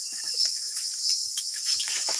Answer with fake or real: fake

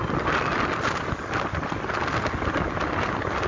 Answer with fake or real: real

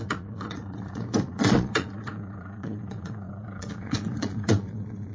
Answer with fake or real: fake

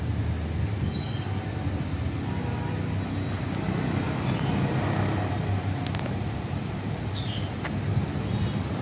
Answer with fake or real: real